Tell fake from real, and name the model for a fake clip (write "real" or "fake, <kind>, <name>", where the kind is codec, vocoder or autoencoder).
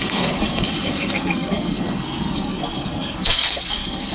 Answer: fake, codec, SNAC